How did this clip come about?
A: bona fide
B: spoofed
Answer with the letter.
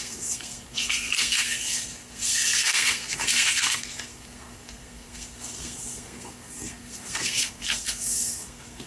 B